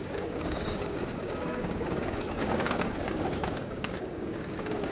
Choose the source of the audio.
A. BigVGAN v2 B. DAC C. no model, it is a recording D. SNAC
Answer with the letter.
B